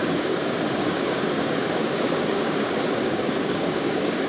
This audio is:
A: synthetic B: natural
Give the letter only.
A